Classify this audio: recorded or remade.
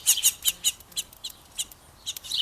recorded